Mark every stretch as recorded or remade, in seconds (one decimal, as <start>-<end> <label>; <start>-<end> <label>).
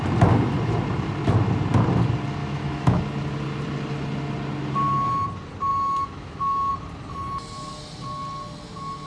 0.0-2.4 recorded; 2.4-3.0 remade; 3.0-5.7 recorded; 5.7-6.7 remade; 6.7-9.1 recorded